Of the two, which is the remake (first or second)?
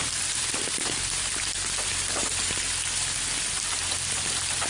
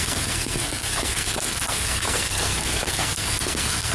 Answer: second